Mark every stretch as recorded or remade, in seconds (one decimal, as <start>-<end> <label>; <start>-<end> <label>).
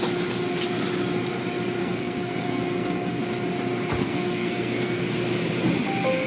0.0-1.8 recorded; 1.8-3.2 remade; 3.2-4.0 recorded; 4.0-5.0 remade; 5.0-6.3 recorded